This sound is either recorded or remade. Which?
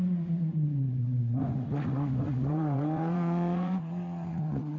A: remade